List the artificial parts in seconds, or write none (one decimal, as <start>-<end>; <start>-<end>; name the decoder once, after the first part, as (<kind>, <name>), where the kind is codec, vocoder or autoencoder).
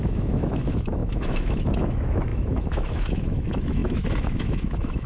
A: 0.0-5.1 (autoencoder, DAC-VAE)